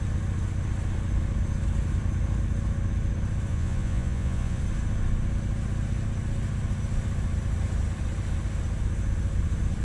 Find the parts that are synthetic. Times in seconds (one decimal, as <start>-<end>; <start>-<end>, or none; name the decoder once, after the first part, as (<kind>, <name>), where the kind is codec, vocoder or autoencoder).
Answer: 3.5-4.6 (vocoder, Vocos)